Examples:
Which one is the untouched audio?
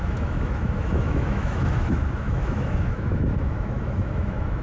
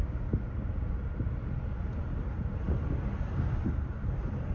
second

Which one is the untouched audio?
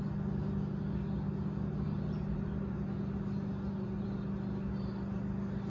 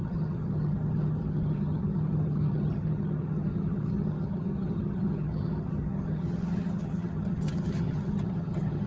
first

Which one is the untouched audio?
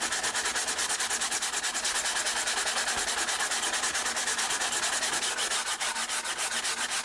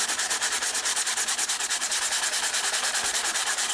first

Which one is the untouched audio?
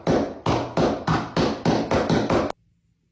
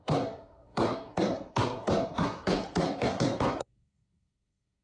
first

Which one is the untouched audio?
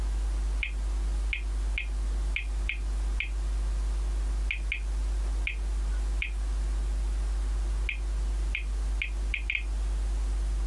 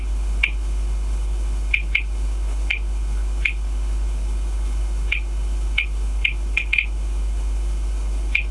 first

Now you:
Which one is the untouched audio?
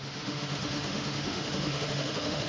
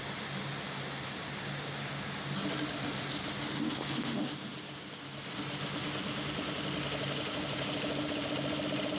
second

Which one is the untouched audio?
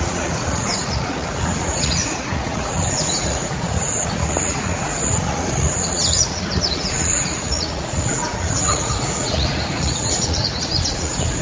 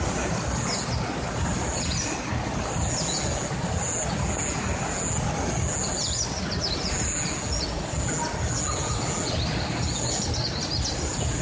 second